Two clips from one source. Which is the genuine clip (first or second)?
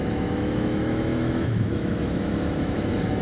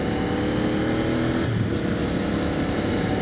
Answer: second